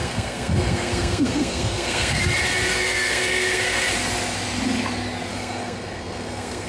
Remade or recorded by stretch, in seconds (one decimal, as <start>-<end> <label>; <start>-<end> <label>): 0.0-2.2 remade; 2.2-2.7 recorded; 2.7-3.9 remade; 3.9-5.3 recorded; 5.3-6.7 remade